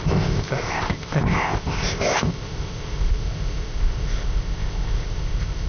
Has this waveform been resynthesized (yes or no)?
yes